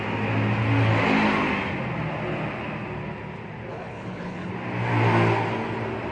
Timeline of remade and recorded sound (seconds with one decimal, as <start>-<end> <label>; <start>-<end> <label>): 0.0-3.7 recorded; 3.7-4.5 remade; 4.5-6.1 recorded